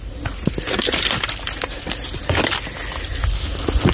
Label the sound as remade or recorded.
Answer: recorded